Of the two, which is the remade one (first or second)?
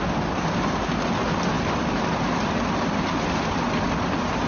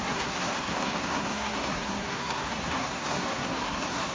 second